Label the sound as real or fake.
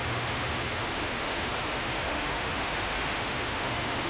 fake